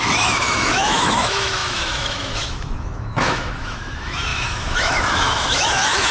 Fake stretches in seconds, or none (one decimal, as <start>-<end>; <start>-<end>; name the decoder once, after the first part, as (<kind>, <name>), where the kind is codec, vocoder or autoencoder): 0.0-6.1 (autoencoder, DAC-VAE)

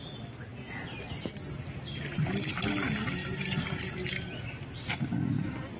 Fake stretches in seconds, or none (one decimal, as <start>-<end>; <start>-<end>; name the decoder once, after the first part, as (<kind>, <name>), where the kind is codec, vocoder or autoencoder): 0.5-1.0 (vocoder, BigVGAN v2); 3.2-3.9

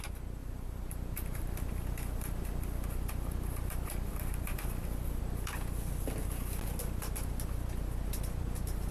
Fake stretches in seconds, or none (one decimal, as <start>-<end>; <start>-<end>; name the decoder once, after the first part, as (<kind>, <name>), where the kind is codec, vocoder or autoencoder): 0.4-5.2 (vocoder, BigVGAN v2)

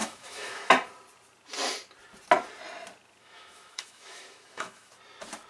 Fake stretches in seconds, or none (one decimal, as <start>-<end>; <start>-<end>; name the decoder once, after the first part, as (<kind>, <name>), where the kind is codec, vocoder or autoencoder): 0.0-0.7 (autoencoder, DAC-VAE); 3.2-4.9